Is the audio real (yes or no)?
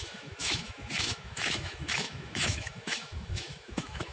no